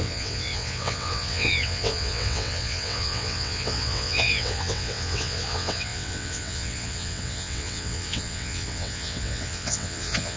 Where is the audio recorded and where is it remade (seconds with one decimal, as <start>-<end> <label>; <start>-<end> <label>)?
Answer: 0.0-10.4 remade